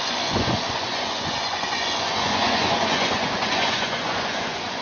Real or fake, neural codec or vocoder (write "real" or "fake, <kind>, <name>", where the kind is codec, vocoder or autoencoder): fake, vocoder, Vocos